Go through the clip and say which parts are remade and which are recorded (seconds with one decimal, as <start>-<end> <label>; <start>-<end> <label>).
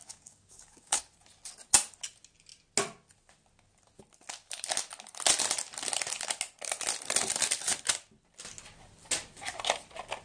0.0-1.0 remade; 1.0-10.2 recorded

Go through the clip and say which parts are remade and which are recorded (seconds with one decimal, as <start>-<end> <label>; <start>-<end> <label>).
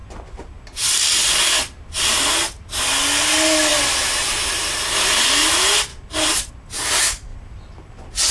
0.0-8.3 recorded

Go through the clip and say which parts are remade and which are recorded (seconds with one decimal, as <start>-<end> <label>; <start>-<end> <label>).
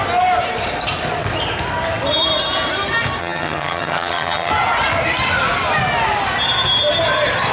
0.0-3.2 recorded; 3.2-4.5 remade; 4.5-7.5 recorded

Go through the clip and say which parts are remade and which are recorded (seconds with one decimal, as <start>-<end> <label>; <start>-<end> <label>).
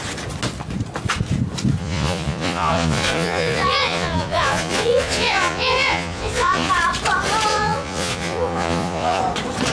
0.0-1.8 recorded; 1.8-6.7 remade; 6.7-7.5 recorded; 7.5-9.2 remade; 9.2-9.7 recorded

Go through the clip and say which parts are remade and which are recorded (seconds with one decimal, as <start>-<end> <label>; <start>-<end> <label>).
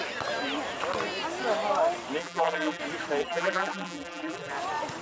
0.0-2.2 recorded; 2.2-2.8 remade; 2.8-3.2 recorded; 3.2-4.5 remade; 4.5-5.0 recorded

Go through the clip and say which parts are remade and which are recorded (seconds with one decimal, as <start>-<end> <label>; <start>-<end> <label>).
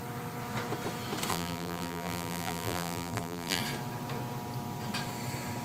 0.0-1.3 recorded; 1.3-3.6 remade; 3.6-5.6 recorded